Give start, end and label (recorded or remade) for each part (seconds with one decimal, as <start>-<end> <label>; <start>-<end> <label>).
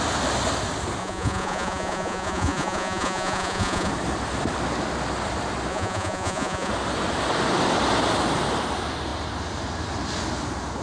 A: 0.0-1.0 recorded; 1.0-3.9 remade; 3.9-5.7 recorded; 5.7-6.7 remade; 6.7-10.8 recorded